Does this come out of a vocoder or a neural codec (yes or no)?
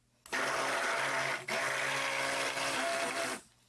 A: no